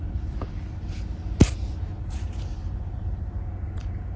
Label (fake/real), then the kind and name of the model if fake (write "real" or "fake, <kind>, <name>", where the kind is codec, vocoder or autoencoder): real